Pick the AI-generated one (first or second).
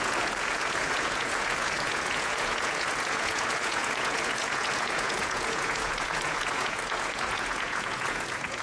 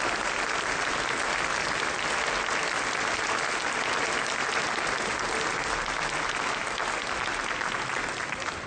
first